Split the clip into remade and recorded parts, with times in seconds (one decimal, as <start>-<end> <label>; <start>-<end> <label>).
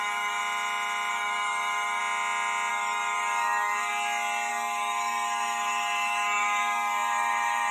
0.0-0.4 remade; 0.4-1.1 recorded; 1.1-2.0 remade; 2.0-2.7 recorded; 2.7-3.9 remade; 3.9-4.5 recorded; 4.5-7.7 remade